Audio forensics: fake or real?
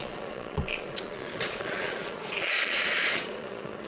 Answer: fake